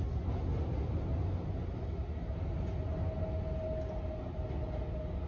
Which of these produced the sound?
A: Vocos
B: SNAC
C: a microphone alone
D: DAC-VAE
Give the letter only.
C